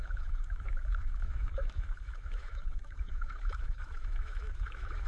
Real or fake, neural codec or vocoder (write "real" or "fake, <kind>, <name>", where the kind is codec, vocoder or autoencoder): fake, autoencoder, DAC-VAE